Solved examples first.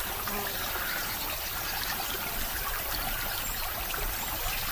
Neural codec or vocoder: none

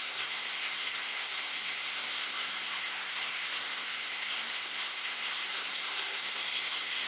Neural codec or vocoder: codec, SNAC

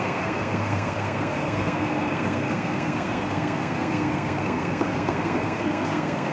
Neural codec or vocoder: codec, SNAC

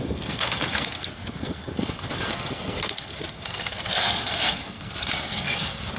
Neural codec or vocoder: codec, SNAC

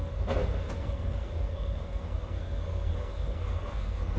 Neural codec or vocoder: codec, SNAC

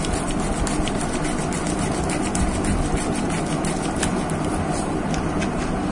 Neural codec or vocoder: none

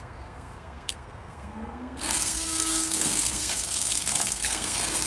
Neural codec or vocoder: codec, SNAC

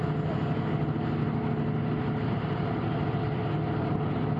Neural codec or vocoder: none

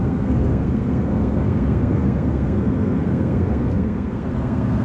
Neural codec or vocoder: codec, SNAC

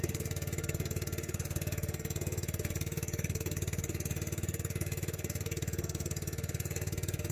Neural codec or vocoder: codec, SNAC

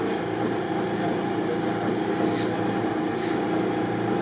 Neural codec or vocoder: none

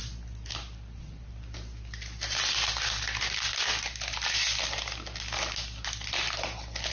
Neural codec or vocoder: none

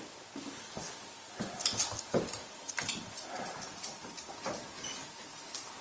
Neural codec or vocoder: none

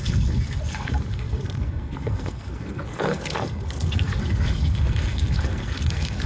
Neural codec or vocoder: codec, SNAC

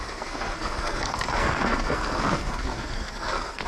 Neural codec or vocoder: codec, SNAC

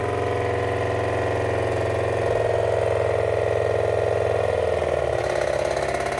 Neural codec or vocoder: none